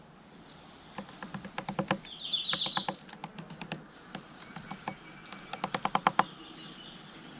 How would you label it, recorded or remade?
recorded